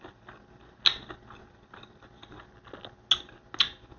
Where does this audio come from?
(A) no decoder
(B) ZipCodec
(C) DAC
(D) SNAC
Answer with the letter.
A